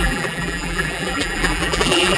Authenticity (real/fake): fake